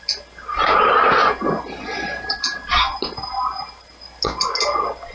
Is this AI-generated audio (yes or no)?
no